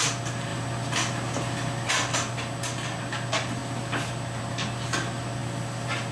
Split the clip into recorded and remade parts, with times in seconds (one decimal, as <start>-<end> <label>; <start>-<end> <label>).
0.0-6.1 recorded